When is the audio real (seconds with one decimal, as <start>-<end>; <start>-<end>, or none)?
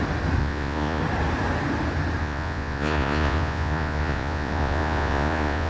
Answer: 0.0-0.4; 1.0-2.2